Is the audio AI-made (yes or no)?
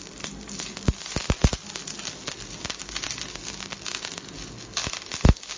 no